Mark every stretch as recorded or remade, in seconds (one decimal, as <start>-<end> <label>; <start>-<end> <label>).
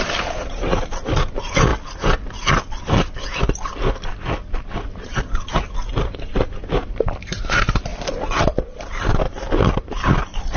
0.0-1.7 remade; 1.7-6.9 recorded; 6.9-7.9 remade; 7.9-9.6 recorded; 9.6-10.6 remade